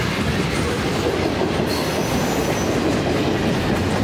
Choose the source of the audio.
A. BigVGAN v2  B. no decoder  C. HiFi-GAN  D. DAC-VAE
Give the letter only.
B